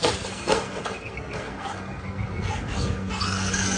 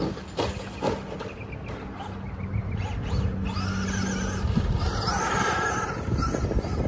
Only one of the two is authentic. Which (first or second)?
second